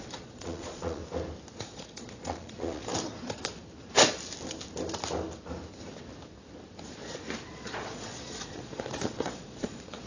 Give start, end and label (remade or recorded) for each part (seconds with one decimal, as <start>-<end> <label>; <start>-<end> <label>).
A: 0.0-1.0 remade; 1.0-1.6 recorded; 1.6-2.9 remade; 2.9-7.5 recorded; 7.5-10.1 remade